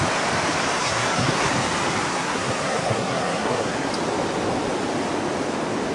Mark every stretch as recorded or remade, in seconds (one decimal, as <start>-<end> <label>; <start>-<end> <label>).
0.0-0.8 recorded; 0.8-1.5 remade; 1.5-2.1 recorded; 2.1-3.9 remade; 3.9-5.9 recorded